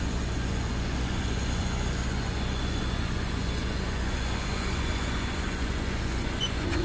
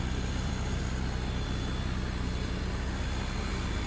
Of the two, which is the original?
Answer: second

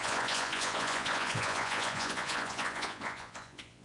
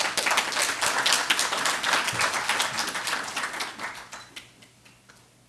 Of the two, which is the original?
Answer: second